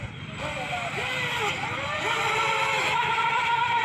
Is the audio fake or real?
real